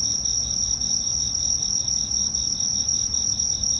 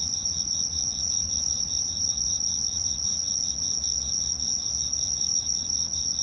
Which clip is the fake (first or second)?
second